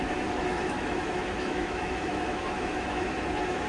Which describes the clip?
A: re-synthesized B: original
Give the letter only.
A